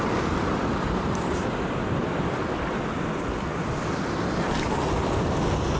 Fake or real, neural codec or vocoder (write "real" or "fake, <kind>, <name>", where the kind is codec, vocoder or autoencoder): real